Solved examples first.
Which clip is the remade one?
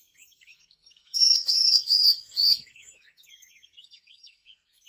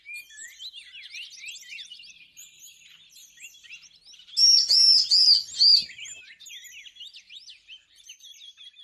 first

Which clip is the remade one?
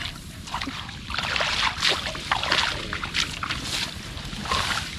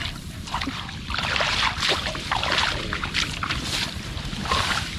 second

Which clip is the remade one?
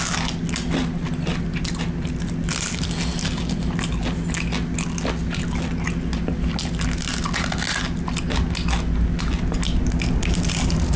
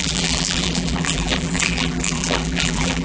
second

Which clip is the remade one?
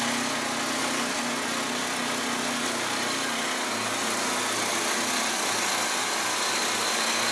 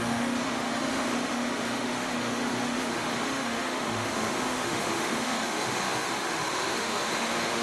second